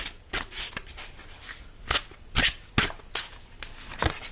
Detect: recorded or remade recorded